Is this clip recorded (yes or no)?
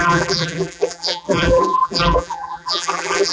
no